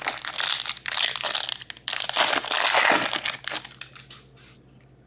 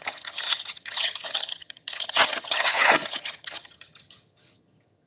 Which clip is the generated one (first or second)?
second